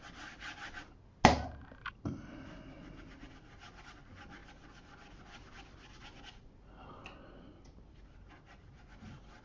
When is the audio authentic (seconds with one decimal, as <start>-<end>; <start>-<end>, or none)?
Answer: 0.0-9.4